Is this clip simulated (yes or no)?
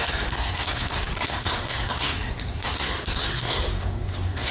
yes